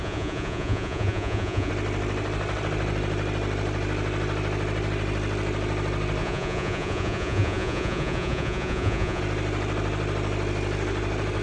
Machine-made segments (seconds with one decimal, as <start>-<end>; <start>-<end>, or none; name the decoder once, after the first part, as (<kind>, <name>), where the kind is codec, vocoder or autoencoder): 0.0-1.7 (vocoder, Vocos); 6.2-9.2